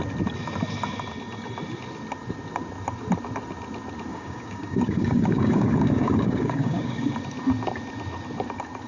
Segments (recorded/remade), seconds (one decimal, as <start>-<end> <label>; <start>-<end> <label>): 0.0-4.1 recorded; 4.1-7.1 remade; 7.1-8.9 recorded